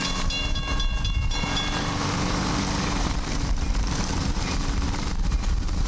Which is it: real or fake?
fake